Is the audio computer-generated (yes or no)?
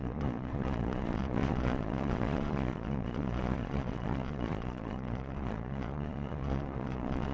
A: yes